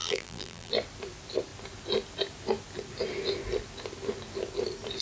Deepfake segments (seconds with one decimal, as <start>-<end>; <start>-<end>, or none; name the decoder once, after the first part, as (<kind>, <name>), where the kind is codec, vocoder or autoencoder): 0.0-0.7 (vocoder, BigVGAN v2)